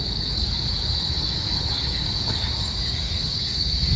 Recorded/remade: remade